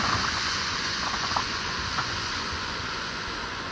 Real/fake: fake